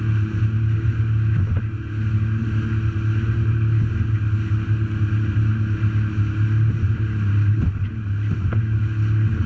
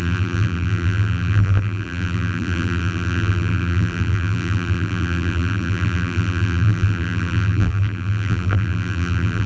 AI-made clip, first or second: second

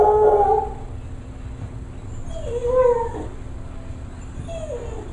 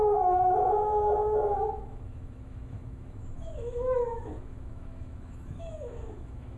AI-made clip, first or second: second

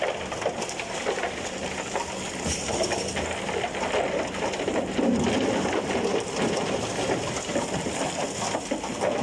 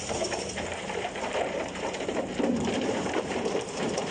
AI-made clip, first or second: second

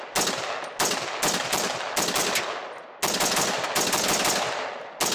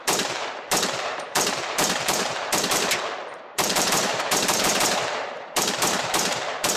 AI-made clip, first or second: second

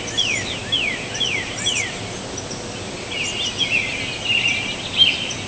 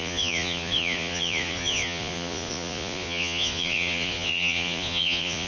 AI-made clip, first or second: second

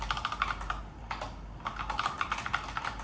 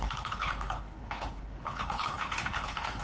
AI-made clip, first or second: second